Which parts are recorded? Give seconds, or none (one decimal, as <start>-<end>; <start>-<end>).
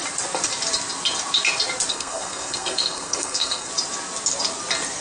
0.0-1.9; 3.7-5.0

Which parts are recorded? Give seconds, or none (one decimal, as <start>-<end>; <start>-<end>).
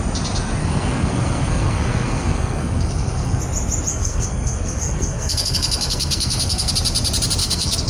0.0-0.6; 3.4-3.9; 6.7-7.4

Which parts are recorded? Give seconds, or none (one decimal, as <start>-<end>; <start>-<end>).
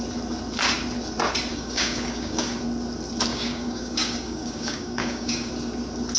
0.0-1.5; 2.6-3.3; 5.5-6.2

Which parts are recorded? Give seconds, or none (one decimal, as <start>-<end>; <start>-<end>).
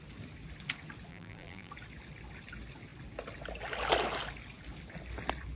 0.0-1.1; 1.7-5.6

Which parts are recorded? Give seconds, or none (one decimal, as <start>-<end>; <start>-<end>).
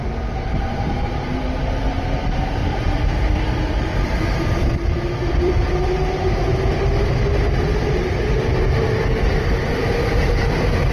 0.0-2.6; 5.9-10.9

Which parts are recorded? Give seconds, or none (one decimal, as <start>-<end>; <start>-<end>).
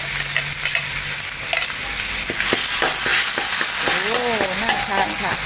0.0-5.5